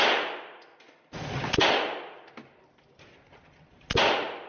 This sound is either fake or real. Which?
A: real